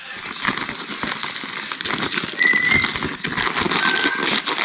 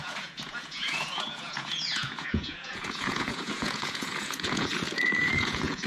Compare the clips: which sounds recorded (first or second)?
first